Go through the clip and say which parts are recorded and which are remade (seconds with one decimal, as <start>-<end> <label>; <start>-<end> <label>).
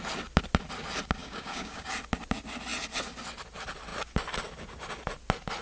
0.0-1.2 recorded; 1.2-1.9 remade; 1.9-5.6 recorded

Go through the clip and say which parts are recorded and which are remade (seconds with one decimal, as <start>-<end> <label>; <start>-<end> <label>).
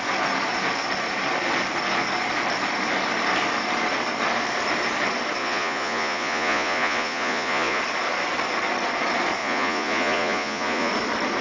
0.0-5.4 recorded; 5.4-7.8 remade; 7.8-9.4 recorded; 9.4-10.9 remade; 10.9-11.4 recorded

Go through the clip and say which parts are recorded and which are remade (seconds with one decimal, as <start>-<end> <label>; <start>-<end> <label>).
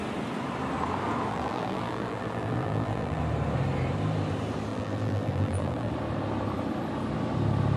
0.0-1.3 recorded; 1.3-3.2 remade; 3.2-4.7 recorded; 4.7-5.9 remade; 5.9-7.8 recorded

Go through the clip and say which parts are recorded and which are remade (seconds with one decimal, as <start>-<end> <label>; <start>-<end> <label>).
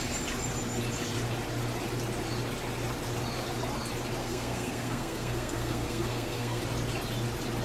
0.0-4.2 recorded; 4.2-6.6 remade; 6.6-7.6 recorded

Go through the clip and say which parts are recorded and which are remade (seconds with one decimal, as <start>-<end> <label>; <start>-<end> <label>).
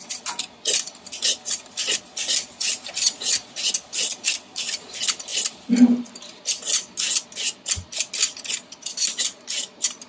0.0-10.1 recorded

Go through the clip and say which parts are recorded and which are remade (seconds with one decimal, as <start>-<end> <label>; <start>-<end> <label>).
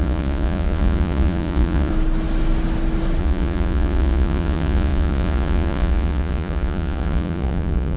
0.0-1.9 remade; 1.9-3.2 recorded; 3.2-8.0 remade